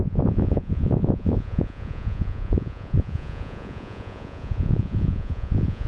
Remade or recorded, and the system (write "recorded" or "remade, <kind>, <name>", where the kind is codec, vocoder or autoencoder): remade, vocoder, Vocos